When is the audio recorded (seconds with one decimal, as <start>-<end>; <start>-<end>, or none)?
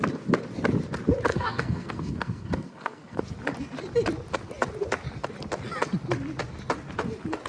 0.0-1.3; 3.2-7.5